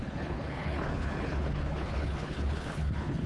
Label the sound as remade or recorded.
remade